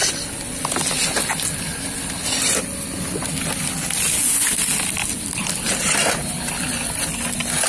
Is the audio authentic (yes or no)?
yes